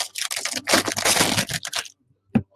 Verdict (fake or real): real